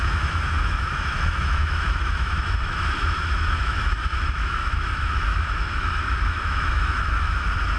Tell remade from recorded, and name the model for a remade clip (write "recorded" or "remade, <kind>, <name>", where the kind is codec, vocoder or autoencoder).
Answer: remade, autoencoder, DAC-VAE